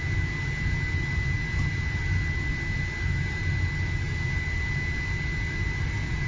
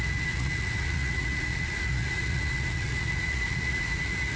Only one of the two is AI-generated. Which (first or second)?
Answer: second